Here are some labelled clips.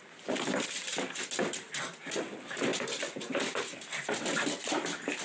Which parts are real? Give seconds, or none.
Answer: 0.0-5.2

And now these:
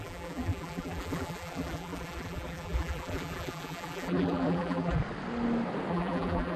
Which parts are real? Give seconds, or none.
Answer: 5.0-5.9

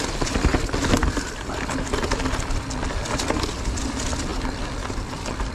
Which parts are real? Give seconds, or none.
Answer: 0.5-3.8; 4.3-4.9

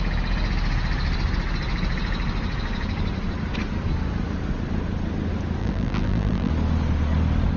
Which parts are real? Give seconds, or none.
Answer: 0.0-5.6; 6.5-7.6